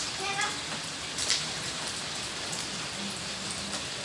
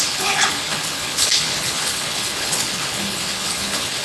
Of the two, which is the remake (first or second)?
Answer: second